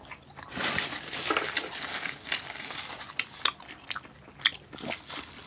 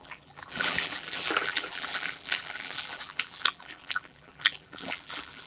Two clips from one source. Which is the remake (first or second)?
second